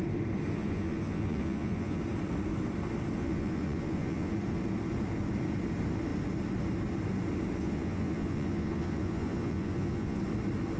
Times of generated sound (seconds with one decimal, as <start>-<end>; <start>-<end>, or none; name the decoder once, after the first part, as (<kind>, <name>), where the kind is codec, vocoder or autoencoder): 0.6-2.0 (vocoder, Vocos); 3.2-4.3; 7.6-10.2